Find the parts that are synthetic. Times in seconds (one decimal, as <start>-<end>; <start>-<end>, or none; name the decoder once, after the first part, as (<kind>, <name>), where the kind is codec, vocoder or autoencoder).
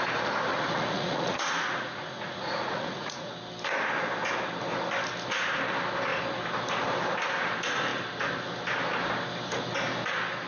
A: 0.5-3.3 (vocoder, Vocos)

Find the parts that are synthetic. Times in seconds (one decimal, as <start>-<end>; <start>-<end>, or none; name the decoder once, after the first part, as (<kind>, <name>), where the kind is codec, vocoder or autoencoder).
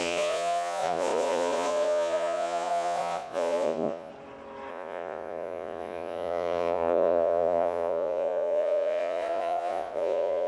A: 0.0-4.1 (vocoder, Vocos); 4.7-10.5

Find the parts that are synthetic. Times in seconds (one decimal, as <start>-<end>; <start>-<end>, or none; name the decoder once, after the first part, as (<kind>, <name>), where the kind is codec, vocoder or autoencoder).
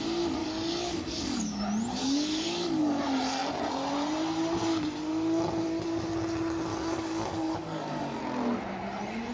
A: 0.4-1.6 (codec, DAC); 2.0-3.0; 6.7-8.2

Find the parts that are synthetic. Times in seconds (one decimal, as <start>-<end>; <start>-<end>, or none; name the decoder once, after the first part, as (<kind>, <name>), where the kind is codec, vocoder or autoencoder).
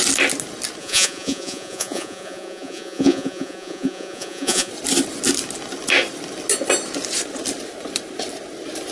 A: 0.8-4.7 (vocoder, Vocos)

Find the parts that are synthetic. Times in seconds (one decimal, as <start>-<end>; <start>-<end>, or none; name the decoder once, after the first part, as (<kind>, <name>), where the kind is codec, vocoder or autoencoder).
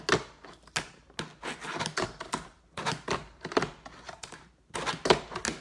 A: 1.6-4.5 (vocoder, BigVGAN v2)